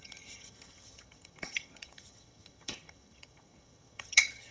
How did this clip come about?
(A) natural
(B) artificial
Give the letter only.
B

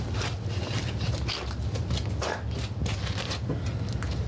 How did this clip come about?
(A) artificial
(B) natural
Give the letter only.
B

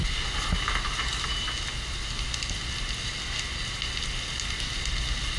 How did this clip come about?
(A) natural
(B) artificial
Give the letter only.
A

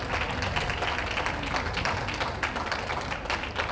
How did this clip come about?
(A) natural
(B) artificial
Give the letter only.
A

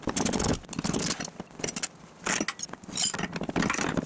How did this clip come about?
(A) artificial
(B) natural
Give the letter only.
B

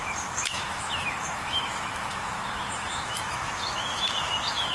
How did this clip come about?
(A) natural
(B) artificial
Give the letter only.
B